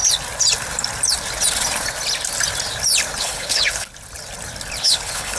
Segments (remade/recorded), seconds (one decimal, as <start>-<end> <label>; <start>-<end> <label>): 0.0-3.2 recorded; 3.2-3.9 remade; 3.9-4.8 recorded; 4.8-5.4 remade